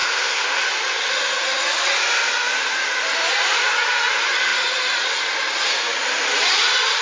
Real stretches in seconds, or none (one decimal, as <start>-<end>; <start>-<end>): 0.6-7.0